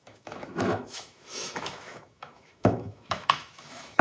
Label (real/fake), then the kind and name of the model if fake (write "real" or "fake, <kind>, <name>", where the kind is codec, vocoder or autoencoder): fake, autoencoder, DAC-VAE